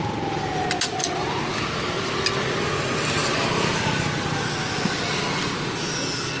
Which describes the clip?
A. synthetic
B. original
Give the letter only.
B